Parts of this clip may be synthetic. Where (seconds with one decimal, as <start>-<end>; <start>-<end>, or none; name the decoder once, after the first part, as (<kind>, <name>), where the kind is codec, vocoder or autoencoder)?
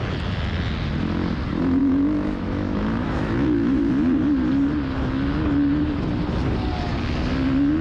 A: 1.8-3.9 (autoencoder, DAC-VAE)